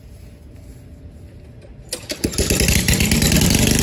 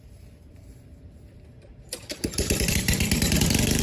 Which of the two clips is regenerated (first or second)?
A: second